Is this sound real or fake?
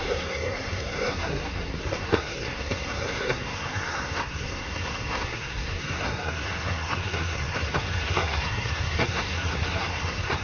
fake